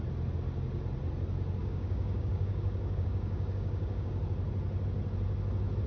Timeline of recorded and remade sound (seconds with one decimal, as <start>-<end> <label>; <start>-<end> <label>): 0.0-1.6 recorded; 1.6-4.2 remade; 4.2-5.9 recorded